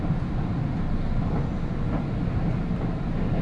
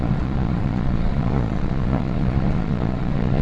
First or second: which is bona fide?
first